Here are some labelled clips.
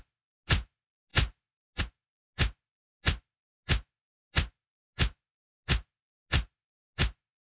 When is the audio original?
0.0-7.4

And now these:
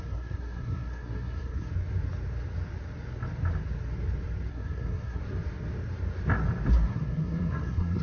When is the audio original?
1.7-4.5; 5.2-6.7